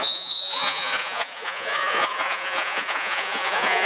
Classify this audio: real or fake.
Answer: fake